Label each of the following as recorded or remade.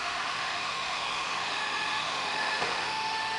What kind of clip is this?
remade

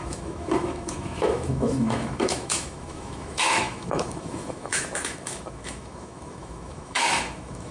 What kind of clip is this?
remade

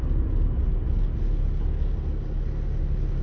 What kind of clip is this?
recorded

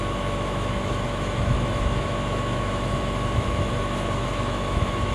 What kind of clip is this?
remade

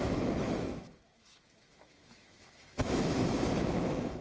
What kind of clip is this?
remade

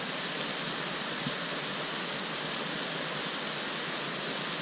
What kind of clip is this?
recorded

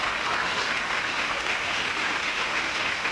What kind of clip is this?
remade